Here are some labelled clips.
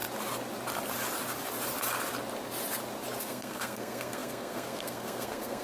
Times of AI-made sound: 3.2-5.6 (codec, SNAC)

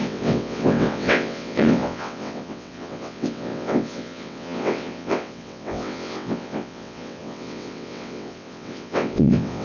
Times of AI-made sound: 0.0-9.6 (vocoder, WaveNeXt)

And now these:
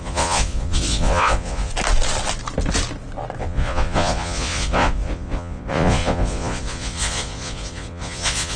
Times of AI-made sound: 0.0-1.7 (vocoder, Vocos); 3.4-8.6